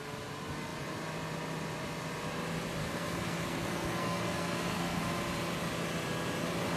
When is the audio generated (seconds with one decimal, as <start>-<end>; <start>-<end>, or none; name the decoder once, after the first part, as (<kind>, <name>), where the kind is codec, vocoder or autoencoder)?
2.8-5.0 (codec, SNAC)